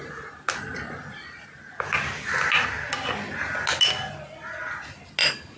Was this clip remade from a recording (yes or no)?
no